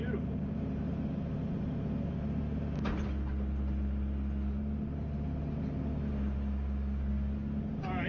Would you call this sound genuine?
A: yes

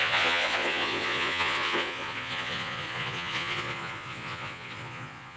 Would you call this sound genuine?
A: no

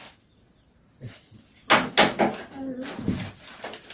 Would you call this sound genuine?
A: yes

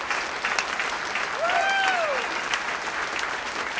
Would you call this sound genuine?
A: yes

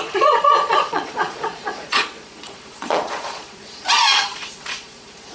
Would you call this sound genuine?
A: no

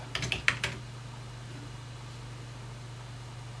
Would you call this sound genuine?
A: yes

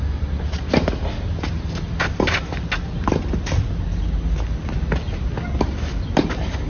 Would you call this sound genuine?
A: yes